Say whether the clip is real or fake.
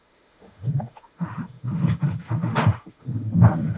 fake